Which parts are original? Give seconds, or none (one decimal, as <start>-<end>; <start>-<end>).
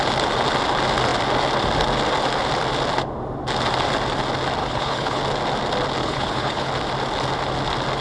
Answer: 0.0-4.6; 5.2-6.0; 6.7-8.0